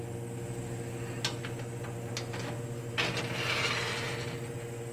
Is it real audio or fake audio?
real